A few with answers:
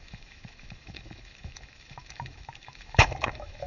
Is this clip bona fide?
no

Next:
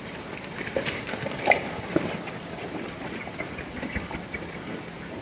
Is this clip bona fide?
no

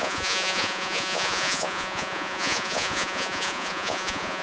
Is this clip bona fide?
no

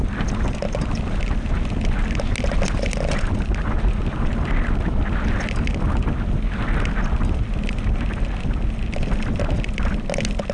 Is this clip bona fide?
yes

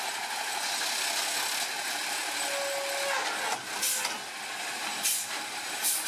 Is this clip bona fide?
yes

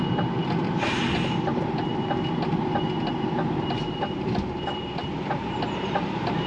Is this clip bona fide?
yes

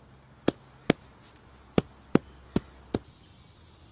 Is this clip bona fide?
yes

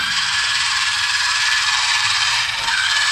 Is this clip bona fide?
no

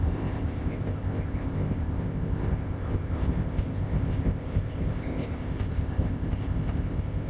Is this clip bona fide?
no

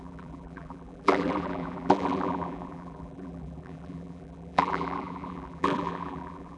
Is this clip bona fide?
no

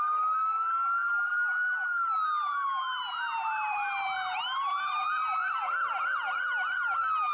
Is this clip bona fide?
yes